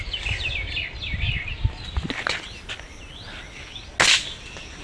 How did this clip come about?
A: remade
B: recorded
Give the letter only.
B